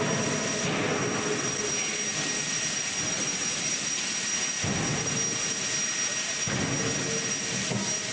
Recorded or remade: recorded